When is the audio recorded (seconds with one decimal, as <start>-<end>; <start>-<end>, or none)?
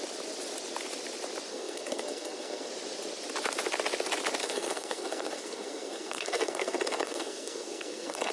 0.0-1.5; 2.7-4.4